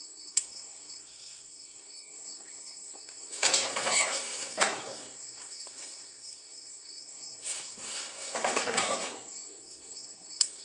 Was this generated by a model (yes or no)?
yes